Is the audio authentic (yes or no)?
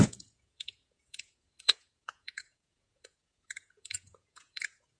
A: no